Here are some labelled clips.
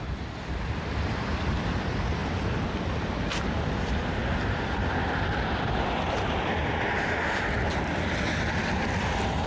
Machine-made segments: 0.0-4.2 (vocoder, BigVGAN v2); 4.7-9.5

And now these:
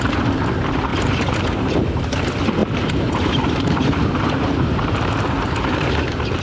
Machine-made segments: 0.9-2.0 (vocoder, BigVGAN v2); 2.6-6.4

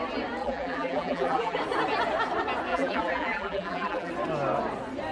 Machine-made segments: 0.4-1.6 (vocoder, BigVGAN v2); 2.7-4.1

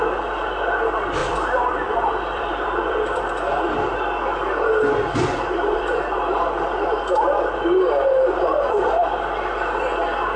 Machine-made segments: 1.2-3.3 (vocoder, BigVGAN v2); 8.5-9.0

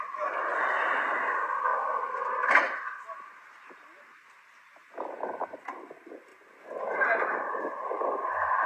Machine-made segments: 0.0-1.7 (vocoder, BigVGAN v2); 2.5-4.8; 5.7-6.3; 7.6-8.7